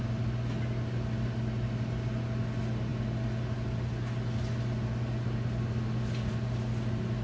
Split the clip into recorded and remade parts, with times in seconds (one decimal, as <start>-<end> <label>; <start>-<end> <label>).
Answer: 0.0-7.2 recorded